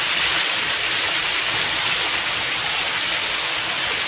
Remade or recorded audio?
recorded